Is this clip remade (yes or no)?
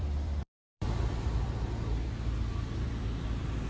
yes